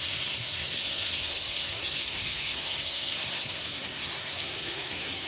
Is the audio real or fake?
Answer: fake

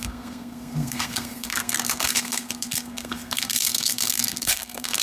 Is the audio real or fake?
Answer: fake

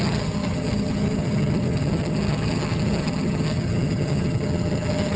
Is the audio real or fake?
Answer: fake